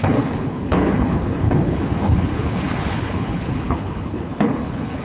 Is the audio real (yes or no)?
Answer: no